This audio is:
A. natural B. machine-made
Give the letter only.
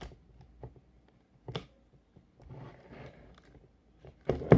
A